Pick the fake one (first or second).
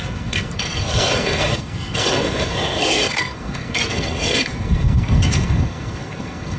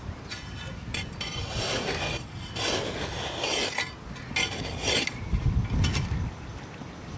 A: first